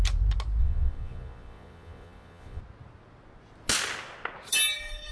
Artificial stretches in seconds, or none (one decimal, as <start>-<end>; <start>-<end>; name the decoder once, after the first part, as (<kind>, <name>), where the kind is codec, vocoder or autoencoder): 0.6-2.6 (vocoder, Vocos)